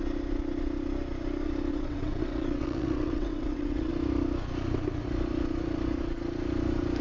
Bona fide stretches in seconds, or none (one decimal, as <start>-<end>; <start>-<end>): 0.0-1.7; 3.9-7.0